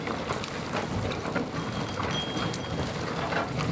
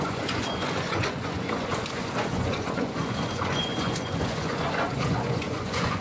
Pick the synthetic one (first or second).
second